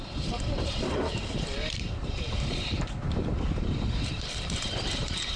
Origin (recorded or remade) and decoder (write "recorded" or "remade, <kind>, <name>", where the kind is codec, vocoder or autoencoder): remade, vocoder, BigVGAN v2